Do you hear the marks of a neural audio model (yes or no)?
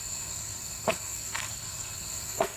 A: yes